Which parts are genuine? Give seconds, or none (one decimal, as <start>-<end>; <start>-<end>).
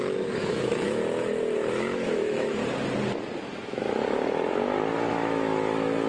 1.0-1.7; 2.6-3.4; 4.0-5.1